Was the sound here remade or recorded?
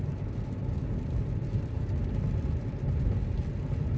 recorded